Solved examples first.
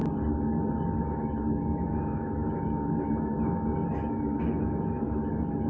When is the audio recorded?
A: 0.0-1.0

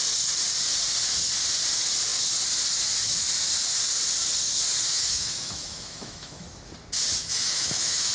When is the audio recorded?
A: 0.0-4.9; 6.5-7.2